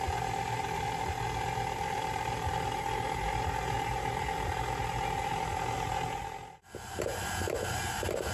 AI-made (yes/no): no